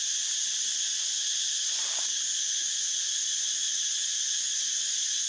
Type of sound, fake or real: real